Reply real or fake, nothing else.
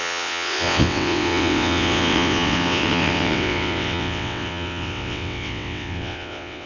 fake